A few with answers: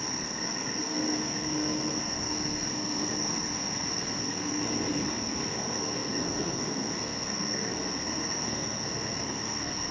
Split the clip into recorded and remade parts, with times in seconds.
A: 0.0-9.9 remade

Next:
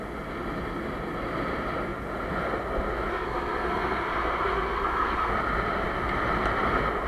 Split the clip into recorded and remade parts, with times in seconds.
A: 0.0-3.1 recorded; 3.1-5.3 remade; 5.3-7.1 recorded

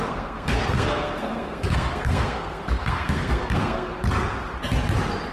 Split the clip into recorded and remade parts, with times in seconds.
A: 0.0-3.9 remade; 3.9-5.3 recorded

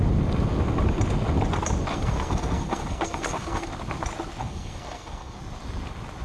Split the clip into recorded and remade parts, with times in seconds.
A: 0.0-1.9 recorded; 1.9-3.7 remade; 3.7-4.4 recorded; 4.4-5.4 remade; 5.4-6.2 recorded

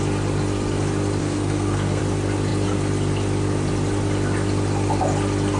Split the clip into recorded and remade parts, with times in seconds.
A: 0.0-1.2 recorded; 1.2-2.0 remade; 2.0-5.6 recorded

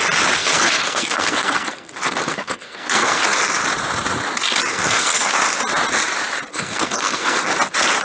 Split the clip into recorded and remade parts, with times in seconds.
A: 0.0-0.4 recorded; 0.4-3.2 remade; 3.2-4.7 recorded; 4.7-5.3 remade; 5.3-6.5 recorded; 6.5-7.5 remade; 7.5-8.0 recorded

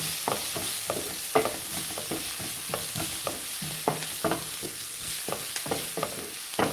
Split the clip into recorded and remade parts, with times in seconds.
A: 0.0-4.6 recorded; 4.6-5.2 remade; 5.2-6.7 recorded